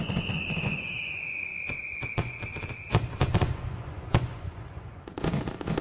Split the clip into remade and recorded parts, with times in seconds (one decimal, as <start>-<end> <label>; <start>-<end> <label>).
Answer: 0.0-5.8 remade